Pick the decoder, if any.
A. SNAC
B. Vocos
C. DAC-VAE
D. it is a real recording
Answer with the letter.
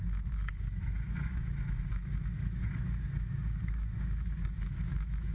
C